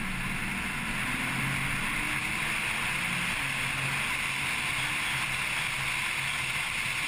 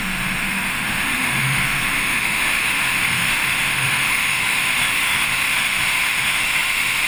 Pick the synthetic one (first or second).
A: second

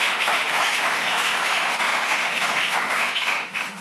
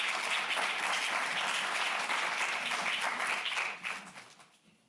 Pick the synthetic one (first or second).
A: first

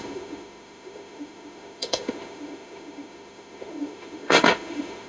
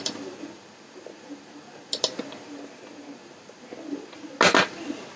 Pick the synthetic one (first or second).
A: first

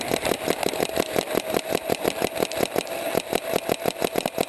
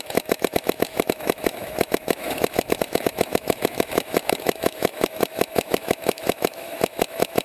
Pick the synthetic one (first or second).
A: second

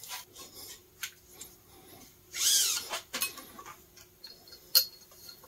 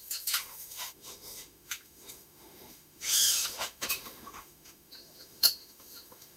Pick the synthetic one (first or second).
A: second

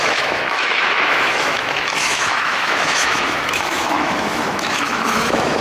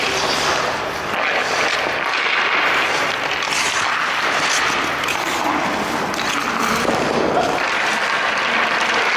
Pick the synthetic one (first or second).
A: first